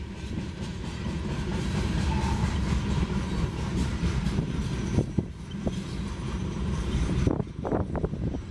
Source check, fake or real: fake